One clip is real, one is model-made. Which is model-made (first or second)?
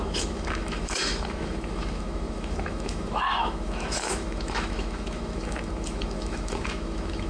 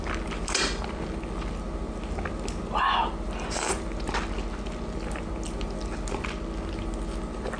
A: first